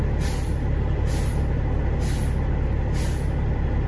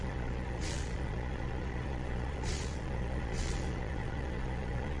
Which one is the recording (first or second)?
first